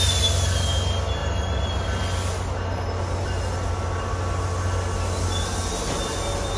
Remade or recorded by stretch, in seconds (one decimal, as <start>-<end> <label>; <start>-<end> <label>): 0.0-6.6 recorded